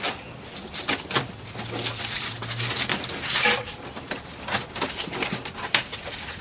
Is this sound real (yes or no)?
yes